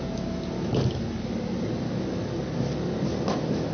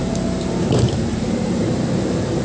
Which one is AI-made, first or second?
second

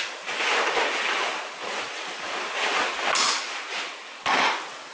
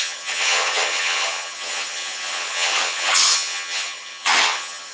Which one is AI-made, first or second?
second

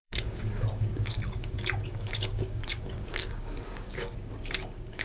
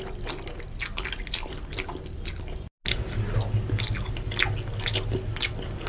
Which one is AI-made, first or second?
first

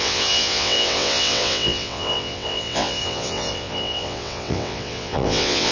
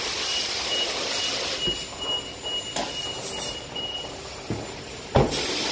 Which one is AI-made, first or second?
first